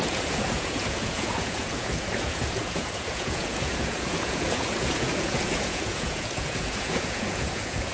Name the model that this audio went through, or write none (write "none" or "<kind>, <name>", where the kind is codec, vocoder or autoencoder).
vocoder, Vocos